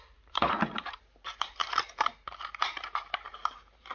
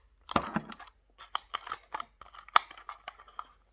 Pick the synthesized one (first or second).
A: first